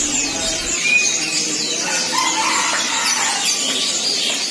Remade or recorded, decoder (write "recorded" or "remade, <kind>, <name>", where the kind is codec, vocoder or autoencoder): recorded